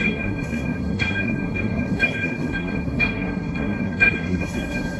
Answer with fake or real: fake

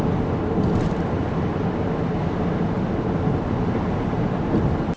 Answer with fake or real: real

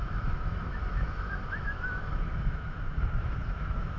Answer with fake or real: fake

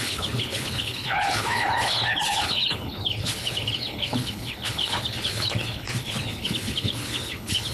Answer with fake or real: fake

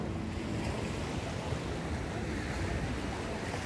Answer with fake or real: real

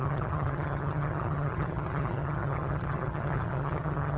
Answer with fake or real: fake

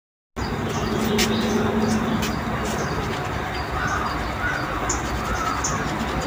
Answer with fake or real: real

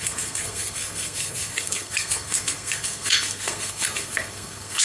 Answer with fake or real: fake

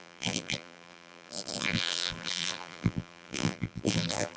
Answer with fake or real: fake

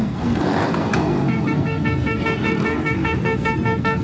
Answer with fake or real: fake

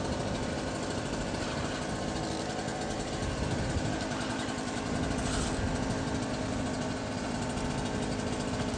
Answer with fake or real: real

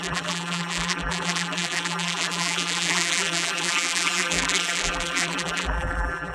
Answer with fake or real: fake